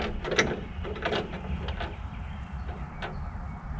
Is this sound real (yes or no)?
yes